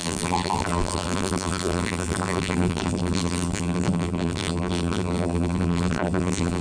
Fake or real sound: fake